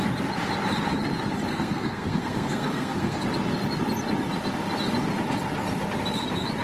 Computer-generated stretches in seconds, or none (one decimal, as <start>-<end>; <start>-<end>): 1.5-3.2